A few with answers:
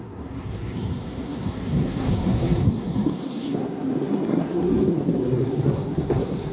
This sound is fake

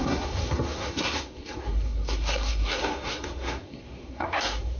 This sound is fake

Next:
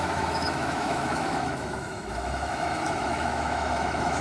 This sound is fake